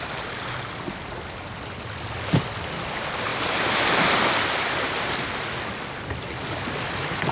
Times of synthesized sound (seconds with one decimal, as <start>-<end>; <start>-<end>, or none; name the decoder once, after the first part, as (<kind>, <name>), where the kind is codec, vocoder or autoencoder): none

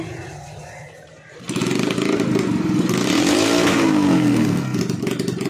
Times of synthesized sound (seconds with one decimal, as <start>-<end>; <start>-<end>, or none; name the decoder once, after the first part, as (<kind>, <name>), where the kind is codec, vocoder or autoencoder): 3.7-4.8 (codec, SNAC)

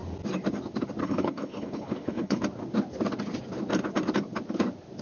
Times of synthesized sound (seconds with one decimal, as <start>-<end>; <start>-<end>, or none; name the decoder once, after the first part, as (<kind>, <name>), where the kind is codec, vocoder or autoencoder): 1.0-2.4 (codec, HILCodec)

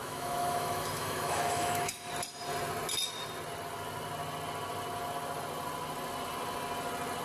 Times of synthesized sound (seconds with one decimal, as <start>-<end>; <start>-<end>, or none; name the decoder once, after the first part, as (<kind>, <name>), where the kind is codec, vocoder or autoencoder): 0.0-2.1 (autoencoder, DAC-VAE)